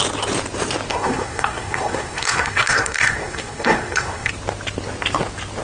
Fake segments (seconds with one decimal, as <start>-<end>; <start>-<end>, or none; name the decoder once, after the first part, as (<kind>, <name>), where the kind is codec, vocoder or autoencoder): 0.9-4.3 (codec, SNAC)